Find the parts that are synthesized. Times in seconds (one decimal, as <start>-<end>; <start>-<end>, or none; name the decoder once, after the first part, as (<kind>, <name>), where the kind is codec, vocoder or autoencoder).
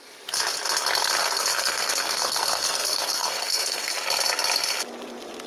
1.2-4.0 (codec, SNAC)